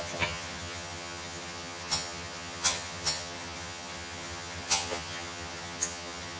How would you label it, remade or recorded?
remade